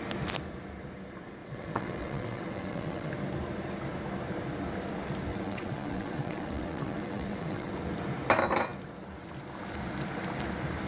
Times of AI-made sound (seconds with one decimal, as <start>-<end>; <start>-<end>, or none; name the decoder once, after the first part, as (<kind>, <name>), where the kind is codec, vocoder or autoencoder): 1.4-3.1 (vocoder, WaveNeXt); 5.3-7.7